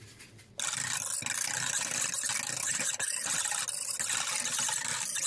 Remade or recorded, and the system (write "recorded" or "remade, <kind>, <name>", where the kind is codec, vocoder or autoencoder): recorded